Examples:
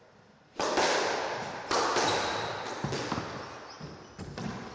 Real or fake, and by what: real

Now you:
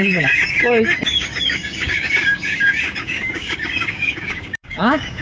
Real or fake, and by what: fake, codec, DAC